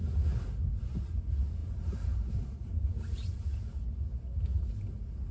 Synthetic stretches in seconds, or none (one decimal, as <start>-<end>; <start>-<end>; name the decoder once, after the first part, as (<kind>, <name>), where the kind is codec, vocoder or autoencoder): none